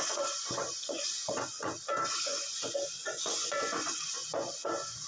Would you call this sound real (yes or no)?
no